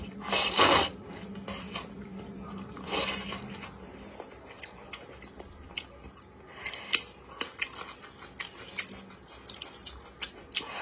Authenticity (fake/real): real